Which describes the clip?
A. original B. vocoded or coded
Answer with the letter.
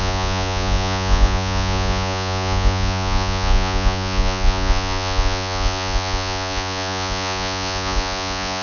B